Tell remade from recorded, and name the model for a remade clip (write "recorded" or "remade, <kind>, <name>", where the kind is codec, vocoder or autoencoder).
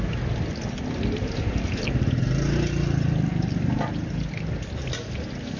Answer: recorded